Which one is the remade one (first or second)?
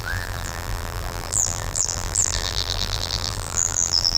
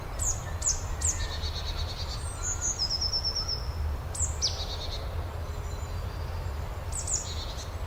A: first